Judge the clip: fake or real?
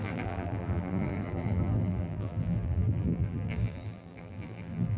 fake